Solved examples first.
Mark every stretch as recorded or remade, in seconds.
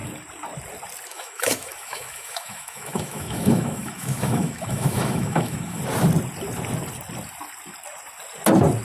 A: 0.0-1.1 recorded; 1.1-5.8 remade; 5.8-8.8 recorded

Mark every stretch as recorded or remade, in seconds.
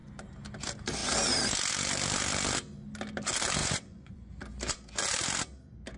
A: 0.0-3.6 recorded; 3.6-4.3 remade; 4.3-6.0 recorded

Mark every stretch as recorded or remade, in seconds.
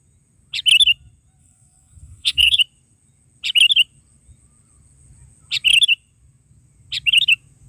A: 0.0-1.4 recorded; 1.4-2.6 remade; 2.6-7.7 recorded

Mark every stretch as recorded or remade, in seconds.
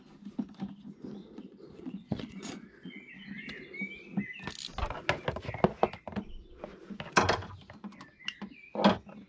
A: 0.0-1.2 recorded; 1.2-3.1 remade; 3.1-9.3 recorded